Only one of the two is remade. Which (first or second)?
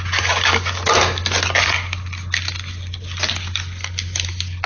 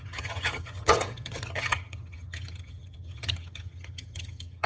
second